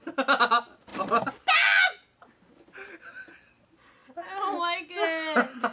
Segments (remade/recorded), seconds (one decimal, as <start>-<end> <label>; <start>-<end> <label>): 0.0-5.7 recorded